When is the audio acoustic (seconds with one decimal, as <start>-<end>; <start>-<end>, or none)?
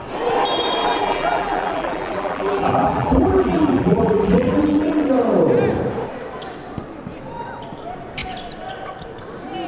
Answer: 0.0-0.8; 5.1-9.7